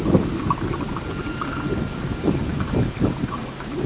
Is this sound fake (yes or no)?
yes